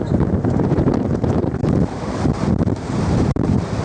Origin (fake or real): fake